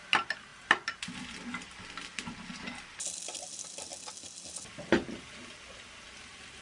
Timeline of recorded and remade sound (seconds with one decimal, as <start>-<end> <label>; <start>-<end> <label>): 0.0-6.6 recorded